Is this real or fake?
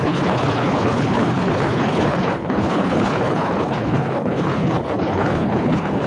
fake